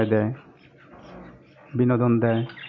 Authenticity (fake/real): real